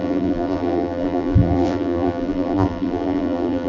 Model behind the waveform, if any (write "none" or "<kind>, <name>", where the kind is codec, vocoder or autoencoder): vocoder, BigVGAN v2